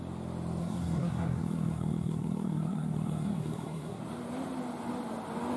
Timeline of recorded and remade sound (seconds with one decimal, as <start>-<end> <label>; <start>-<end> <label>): 0.0-0.6 recorded; 0.6-4.0 remade; 4.0-5.6 recorded

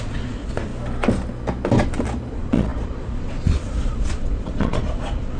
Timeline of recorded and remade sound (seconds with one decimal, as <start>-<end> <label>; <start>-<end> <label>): 0.0-0.7 remade; 0.7-2.3 recorded; 2.3-5.4 remade

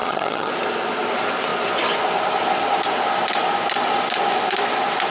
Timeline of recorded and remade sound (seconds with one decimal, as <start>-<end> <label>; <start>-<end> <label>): 0.0-0.5 remade; 0.5-5.1 recorded

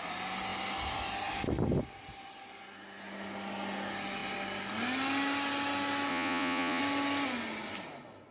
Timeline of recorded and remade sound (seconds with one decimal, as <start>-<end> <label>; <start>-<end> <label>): 0.0-6.1 recorded; 6.1-6.8 remade; 6.8-8.3 recorded

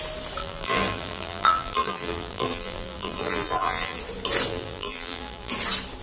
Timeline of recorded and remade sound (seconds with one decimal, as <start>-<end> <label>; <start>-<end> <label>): 0.0-0.4 recorded; 0.4-4.0 remade; 4.0-4.5 recorded; 4.5-5.5 remade; 5.5-6.0 recorded

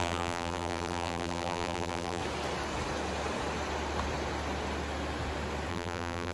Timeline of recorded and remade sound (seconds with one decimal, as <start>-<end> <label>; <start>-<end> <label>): 0.0-2.2 remade; 2.2-5.7 recorded; 5.7-6.3 remade